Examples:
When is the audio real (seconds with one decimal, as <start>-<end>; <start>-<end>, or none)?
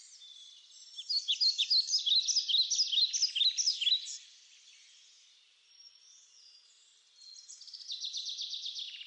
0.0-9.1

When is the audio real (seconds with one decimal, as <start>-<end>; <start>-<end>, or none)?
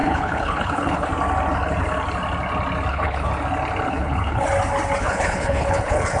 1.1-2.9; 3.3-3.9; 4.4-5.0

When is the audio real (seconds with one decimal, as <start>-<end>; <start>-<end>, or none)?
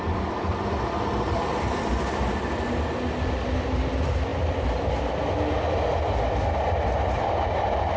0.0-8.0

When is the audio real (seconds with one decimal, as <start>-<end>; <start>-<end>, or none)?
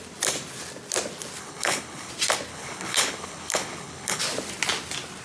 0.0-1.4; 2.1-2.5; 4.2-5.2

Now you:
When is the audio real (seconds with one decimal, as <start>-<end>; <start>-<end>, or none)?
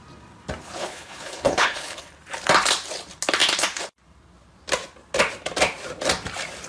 0.0-0.6; 2.1-6.7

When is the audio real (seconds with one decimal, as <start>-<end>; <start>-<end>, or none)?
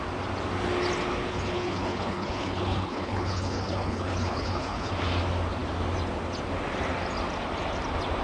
0.0-1.3; 4.9-8.2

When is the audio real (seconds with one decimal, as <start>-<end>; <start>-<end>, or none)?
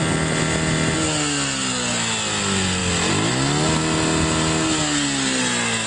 0.0-5.9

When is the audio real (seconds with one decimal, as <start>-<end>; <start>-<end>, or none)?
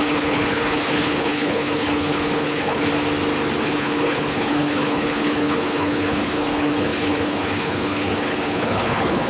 2.9-3.6